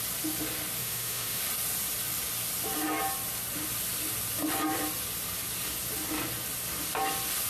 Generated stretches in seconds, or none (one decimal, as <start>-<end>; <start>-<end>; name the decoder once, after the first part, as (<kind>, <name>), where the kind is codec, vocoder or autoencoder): 0.8-1.4 (autoencoder, DAC-VAE)